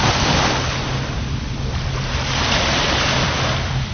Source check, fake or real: real